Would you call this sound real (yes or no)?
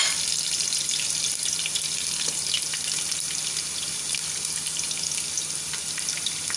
yes